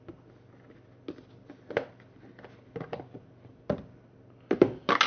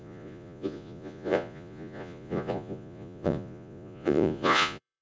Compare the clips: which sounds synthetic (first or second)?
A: second